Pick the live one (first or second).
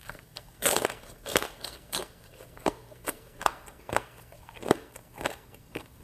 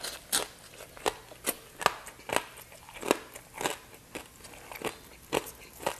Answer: second